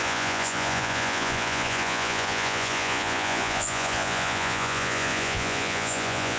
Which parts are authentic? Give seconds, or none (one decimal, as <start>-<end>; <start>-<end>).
none